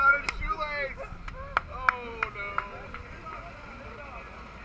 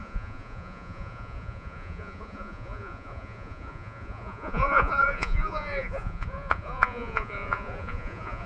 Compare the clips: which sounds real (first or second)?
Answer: first